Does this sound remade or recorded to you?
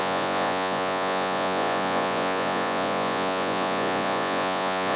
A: remade